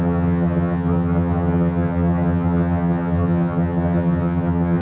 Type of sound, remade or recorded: remade